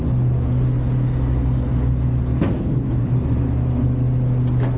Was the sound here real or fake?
real